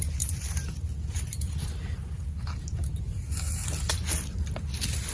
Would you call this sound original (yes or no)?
yes